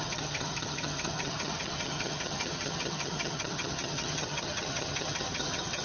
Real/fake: fake